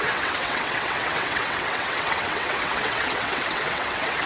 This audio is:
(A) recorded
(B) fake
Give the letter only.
B